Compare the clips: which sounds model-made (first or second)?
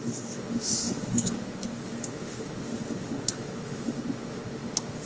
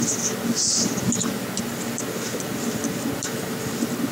first